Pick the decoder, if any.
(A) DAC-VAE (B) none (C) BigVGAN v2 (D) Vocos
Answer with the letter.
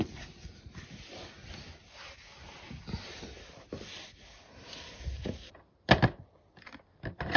B